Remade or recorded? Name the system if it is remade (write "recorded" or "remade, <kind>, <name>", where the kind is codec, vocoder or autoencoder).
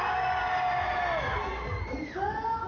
recorded